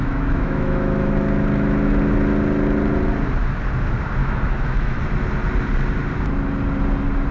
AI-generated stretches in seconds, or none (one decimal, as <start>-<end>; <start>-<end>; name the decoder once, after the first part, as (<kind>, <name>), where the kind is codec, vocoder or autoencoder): 0.0-1.1 (autoencoder, DAC-VAE); 4.2-5.0